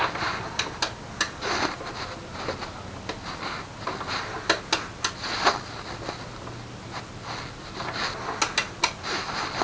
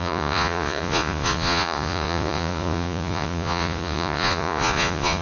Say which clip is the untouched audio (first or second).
first